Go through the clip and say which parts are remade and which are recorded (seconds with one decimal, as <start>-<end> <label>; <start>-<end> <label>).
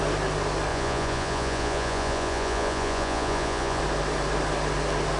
0.0-0.7 recorded; 0.7-3.8 remade; 3.8-5.2 recorded